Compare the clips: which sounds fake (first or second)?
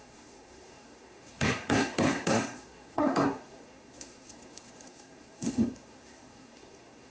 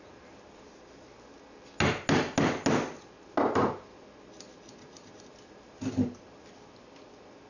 first